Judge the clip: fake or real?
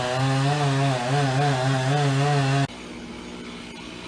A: real